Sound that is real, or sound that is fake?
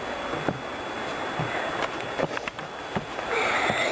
real